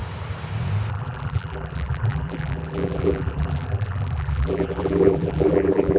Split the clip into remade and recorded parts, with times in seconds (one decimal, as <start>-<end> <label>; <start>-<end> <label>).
0.0-0.9 recorded; 0.9-6.0 remade